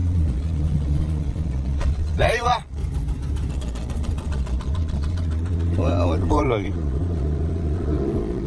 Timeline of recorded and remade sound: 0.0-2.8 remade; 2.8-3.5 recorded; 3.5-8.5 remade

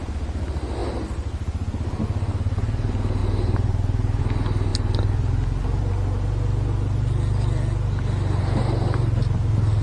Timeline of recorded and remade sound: 0.0-3.2 recorded; 3.2-4.2 remade; 4.2-9.8 recorded

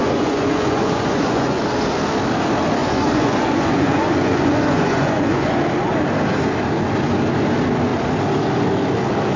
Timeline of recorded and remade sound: 0.0-1.6 remade; 1.6-2.8 recorded; 2.8-5.6 remade; 5.6-9.4 recorded

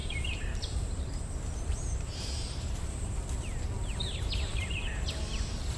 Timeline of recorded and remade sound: 0.0-3.1 remade; 3.1-3.9 recorded; 3.9-4.6 remade; 4.6-5.8 recorded

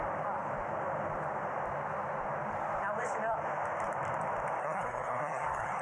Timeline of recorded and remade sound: 0.0-4.6 recorded; 4.6-5.8 remade